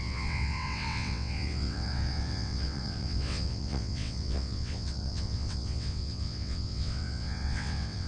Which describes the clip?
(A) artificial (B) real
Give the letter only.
A